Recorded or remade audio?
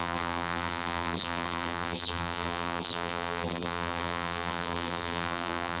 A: remade